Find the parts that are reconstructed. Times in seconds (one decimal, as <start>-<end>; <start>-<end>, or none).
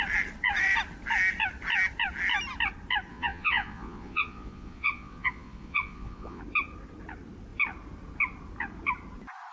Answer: 3.1-6.4